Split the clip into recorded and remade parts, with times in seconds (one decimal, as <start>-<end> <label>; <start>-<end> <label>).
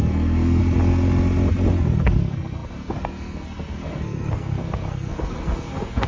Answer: 0.0-0.6 remade; 0.6-2.0 recorded; 2.0-6.1 remade